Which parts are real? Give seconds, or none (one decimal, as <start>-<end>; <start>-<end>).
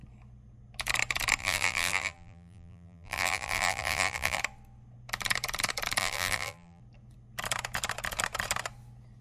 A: 0.0-1.4; 4.4-6.0; 6.8-9.2